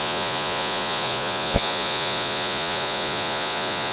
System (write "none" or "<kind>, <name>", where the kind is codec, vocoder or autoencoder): vocoder, Vocos